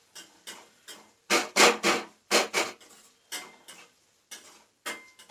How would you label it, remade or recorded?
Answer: recorded